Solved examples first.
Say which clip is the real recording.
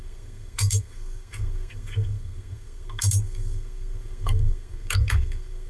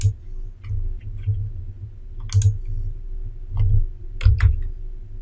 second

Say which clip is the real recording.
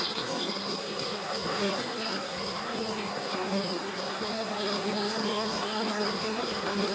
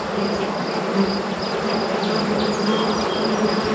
second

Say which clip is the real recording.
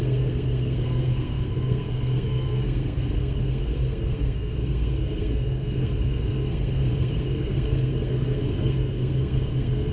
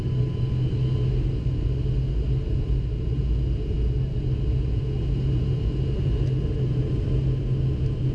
second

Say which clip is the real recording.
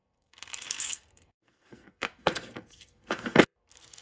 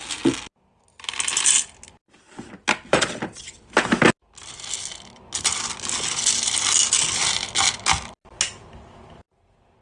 second